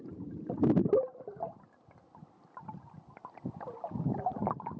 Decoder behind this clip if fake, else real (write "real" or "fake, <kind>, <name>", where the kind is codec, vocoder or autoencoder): real